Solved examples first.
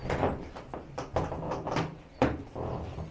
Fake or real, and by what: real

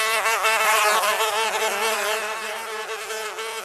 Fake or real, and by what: real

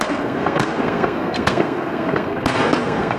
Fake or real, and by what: fake, codec, SNAC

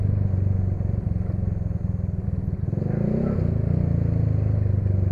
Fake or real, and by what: real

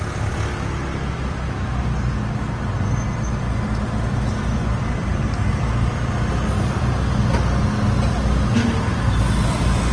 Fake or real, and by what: real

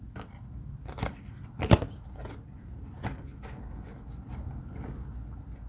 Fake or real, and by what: real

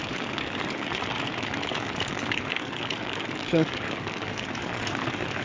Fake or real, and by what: fake, codec, DAC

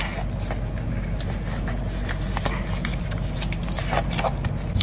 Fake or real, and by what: real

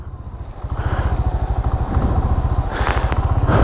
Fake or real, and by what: real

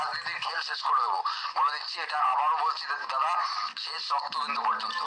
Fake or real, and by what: fake, vocoder, BigVGAN v2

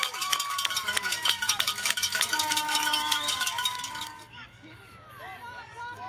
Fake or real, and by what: fake, codec, DAC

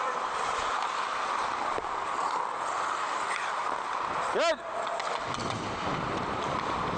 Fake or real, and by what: real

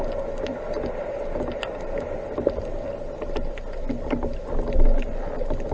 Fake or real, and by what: real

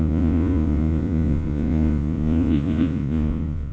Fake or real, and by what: fake, vocoder, Vocos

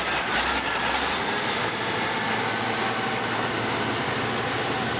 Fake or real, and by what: real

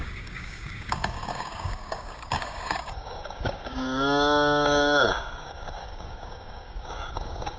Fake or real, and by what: fake, codec, DAC